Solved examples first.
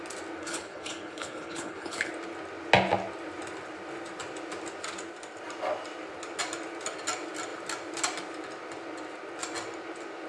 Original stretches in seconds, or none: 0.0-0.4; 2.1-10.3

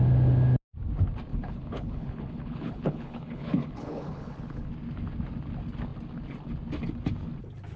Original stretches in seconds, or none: 0.0-1.3; 4.7-7.8

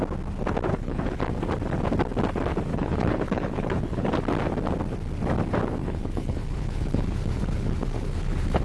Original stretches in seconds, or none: 0.0-0.7; 1.2-2.7; 4.1-5.8

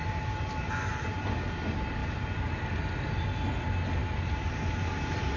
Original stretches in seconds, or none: 0.0-5.4

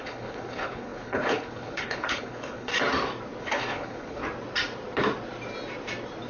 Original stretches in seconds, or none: 2.7-3.4; 4.2-6.3

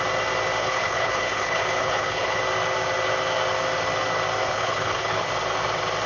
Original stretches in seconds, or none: 0.0-0.6; 2.4-4.4; 5.3-6.1